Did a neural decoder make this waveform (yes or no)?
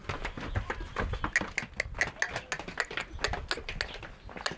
no